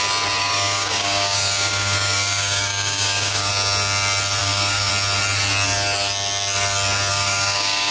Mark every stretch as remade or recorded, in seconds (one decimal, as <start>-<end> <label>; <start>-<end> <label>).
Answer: 0.0-0.4 recorded; 0.4-3.5 remade; 3.5-4.4 recorded; 4.4-4.9 remade; 4.9-7.1 recorded; 7.1-7.9 remade